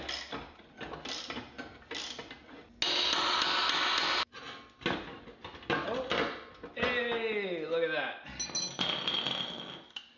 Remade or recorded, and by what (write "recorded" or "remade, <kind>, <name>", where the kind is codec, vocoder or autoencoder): recorded